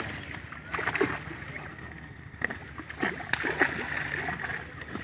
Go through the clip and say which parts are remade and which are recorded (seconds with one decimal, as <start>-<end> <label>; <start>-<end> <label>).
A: 0.0-1.7 recorded; 1.7-2.6 remade; 2.6-5.0 recorded